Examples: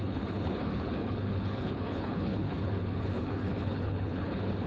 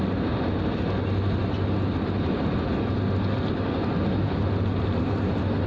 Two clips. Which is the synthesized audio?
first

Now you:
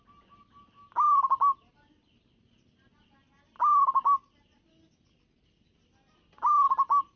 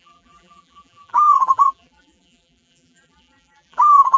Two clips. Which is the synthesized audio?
second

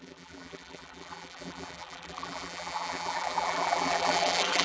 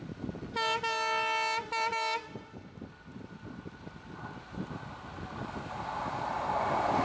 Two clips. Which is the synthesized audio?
first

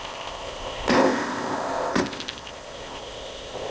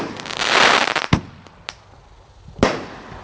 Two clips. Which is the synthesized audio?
first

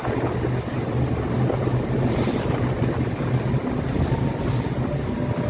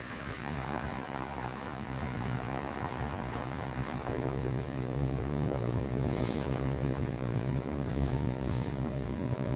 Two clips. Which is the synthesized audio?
second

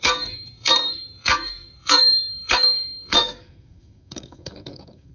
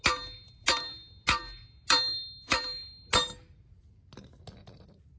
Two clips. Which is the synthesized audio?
first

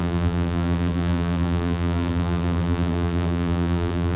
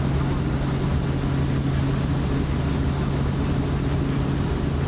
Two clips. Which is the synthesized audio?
first